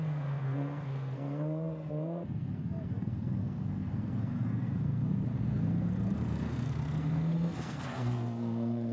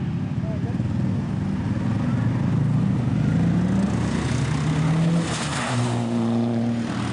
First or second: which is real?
second